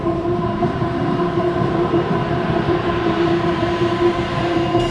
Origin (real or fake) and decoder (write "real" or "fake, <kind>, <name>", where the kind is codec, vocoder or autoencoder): fake, vocoder, BigVGAN v2